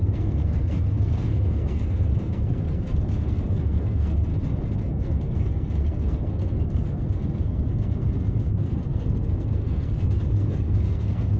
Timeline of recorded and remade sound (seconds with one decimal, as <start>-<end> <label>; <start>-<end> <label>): 0.0-4.3 remade; 4.3-4.8 recorded; 4.8-11.4 remade